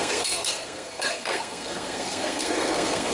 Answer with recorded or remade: remade